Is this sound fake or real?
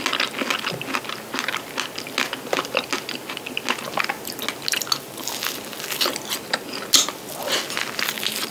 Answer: real